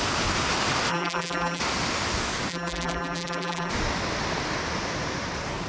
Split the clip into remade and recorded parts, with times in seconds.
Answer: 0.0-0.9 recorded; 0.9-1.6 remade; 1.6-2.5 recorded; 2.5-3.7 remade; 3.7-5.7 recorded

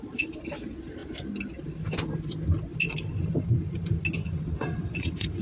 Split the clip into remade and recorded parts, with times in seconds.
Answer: 0.0-4.2 recorded; 4.2-5.4 remade

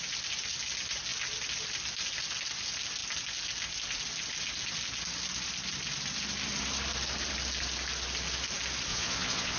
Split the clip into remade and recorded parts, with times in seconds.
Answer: 0.0-8.9 recorded; 8.9-9.6 remade

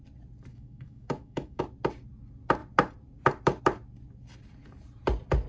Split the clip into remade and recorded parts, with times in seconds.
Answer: 0.0-0.5 recorded; 0.5-1.6 remade; 1.6-5.5 recorded

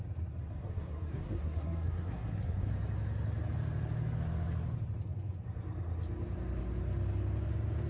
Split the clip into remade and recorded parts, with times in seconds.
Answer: 0.0-0.6 recorded; 0.6-2.7 remade; 2.7-7.9 recorded

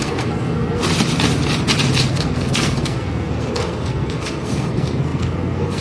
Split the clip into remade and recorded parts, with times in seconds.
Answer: 0.0-0.8 remade; 0.8-2.1 recorded; 2.1-5.8 remade

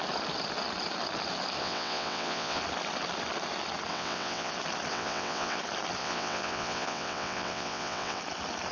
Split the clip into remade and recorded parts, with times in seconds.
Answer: 0.0-1.6 recorded; 1.6-2.6 remade; 2.6-3.9 recorded; 3.9-4.5 remade; 4.5-4.9 recorded; 4.9-5.6 remade; 5.6-6.0 recorded; 6.0-8.2 remade; 8.2-8.7 recorded

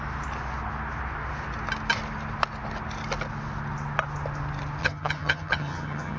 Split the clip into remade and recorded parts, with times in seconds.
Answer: 0.0-4.8 recorded; 4.8-6.2 remade